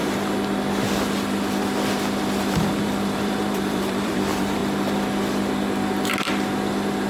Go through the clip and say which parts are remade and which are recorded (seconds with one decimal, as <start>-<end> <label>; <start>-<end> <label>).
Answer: 0.0-2.4 recorded; 2.4-4.6 remade; 4.6-7.1 recorded